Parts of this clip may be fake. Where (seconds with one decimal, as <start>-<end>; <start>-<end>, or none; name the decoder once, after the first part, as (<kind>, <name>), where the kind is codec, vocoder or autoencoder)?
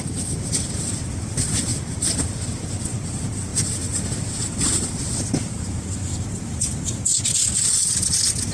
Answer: none